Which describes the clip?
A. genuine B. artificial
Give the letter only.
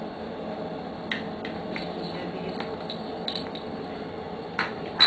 A